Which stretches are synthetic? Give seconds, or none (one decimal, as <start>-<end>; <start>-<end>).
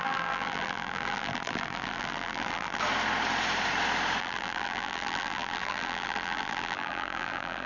0.0-2.8; 4.2-7.7